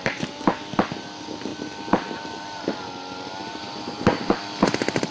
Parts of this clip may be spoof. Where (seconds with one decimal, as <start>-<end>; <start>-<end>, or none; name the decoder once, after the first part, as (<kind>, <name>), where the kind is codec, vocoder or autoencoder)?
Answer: none

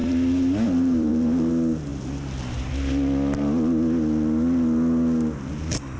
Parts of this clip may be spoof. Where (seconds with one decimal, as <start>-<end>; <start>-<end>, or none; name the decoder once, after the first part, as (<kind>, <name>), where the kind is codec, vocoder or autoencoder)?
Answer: 0.0-1.5 (vocoder, BigVGAN v2)

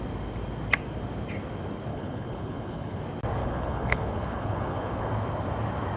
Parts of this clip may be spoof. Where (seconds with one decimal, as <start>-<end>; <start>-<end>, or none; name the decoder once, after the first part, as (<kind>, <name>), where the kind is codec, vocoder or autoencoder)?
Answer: 1.9-3.0 (codec, HILCodec); 3.4-5.1

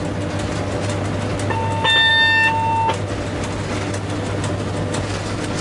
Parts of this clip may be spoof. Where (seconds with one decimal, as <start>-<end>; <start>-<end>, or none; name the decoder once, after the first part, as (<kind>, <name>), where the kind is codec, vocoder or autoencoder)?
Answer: none

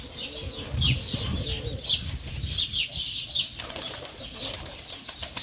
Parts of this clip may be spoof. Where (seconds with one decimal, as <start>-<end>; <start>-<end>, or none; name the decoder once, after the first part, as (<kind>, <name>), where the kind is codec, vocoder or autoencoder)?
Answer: none